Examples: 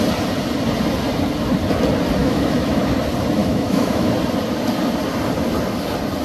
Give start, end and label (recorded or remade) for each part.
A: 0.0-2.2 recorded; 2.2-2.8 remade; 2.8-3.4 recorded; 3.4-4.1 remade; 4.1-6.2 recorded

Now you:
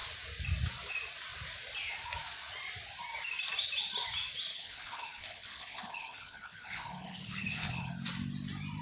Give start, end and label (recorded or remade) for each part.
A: 0.0-4.5 recorded; 4.5-7.9 remade; 7.9-8.8 recorded

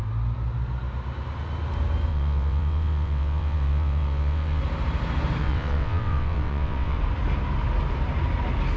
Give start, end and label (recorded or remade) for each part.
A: 0.0-2.1 recorded; 2.1-4.6 remade; 4.6-5.4 recorded; 5.4-7.0 remade; 7.0-8.8 recorded

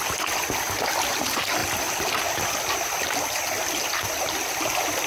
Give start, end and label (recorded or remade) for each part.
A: 0.0-5.1 recorded

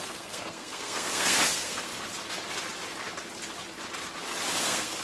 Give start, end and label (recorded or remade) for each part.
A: 0.0-1.9 remade; 1.9-4.6 recorded; 4.6-5.0 remade

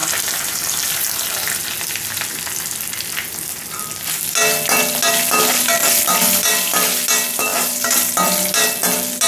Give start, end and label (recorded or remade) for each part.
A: 0.0-1.3 remade; 1.3-5.8 recorded; 5.8-6.5 remade; 6.5-7.5 recorded; 7.5-8.1 remade; 8.1-9.3 recorded

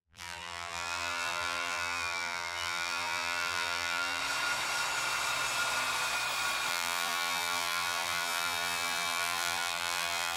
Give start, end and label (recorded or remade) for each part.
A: 0.0-4.2 remade; 4.2-6.7 recorded; 6.7-10.4 remade